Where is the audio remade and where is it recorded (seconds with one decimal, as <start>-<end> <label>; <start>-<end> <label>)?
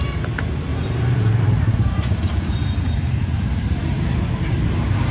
0.0-0.7 recorded; 0.7-3.8 remade; 3.8-5.1 recorded